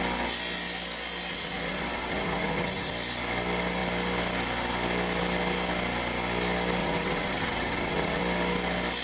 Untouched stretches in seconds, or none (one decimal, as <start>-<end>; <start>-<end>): 0.0-1.3; 2.9-6.8; 8.2-9.0